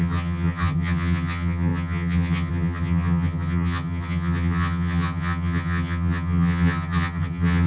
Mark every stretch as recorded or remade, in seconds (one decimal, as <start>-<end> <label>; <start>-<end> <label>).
0.0-7.7 remade